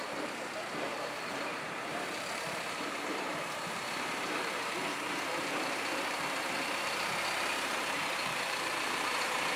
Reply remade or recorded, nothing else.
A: remade